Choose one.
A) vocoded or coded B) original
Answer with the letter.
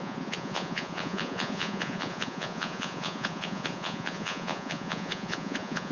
A